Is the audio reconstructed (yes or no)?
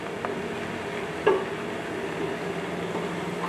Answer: no